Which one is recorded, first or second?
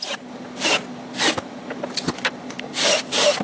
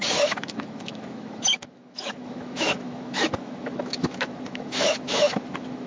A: first